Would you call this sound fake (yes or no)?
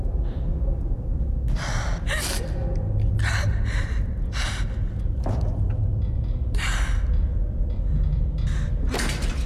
no